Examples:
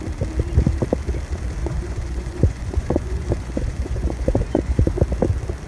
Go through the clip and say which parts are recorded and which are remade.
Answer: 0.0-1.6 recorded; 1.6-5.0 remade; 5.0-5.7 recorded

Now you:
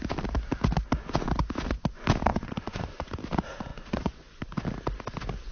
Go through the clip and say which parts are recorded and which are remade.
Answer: 0.0-2.3 recorded; 2.3-3.1 remade; 3.1-3.7 recorded; 3.7-4.4 remade; 4.4-5.5 recorded

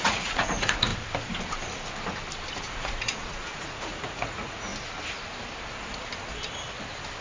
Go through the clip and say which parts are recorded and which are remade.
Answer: 0.0-0.9 remade; 0.9-2.6 recorded; 2.6-4.7 remade; 4.7-7.2 recorded

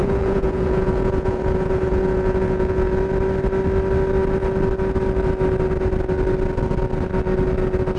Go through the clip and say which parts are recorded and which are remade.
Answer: 0.0-3.0 remade; 3.0-8.0 recorded

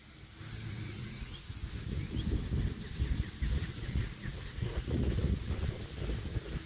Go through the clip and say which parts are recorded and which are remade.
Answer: 0.0-0.7 recorded; 0.7-2.0 remade; 2.0-3.6 recorded; 3.6-5.8 remade; 5.8-6.7 recorded

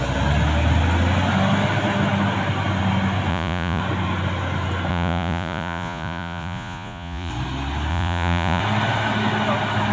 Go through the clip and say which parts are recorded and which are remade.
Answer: 0.0-3.3 recorded; 3.3-3.8 remade; 3.8-4.9 recorded; 4.9-7.3 remade; 7.3-7.9 recorded; 7.9-8.6 remade; 8.6-9.9 recorded

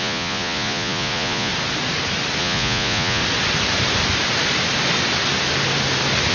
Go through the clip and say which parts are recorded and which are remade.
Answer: 0.0-1.5 remade; 1.5-2.4 recorded; 2.4-3.2 remade; 3.2-6.3 recorded